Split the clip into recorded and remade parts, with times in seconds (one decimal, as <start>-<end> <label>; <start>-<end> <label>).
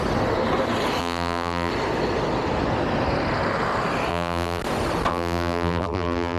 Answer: 0.0-1.0 recorded; 1.0-1.7 remade; 1.7-4.1 recorded; 4.1-4.6 remade; 4.6-5.1 recorded; 5.1-6.4 remade